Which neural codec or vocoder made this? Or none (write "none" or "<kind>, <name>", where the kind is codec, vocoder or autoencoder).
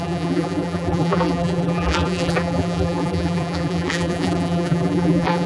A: vocoder, BigVGAN v2